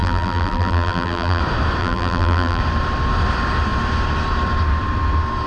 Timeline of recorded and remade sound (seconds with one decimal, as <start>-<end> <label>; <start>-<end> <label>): 0.0-1.4 remade; 1.4-1.8 recorded; 1.8-2.6 remade; 2.6-5.5 recorded